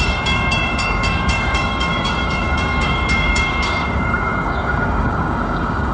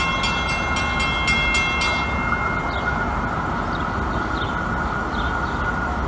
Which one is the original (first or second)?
second